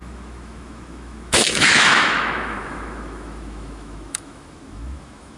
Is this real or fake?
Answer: fake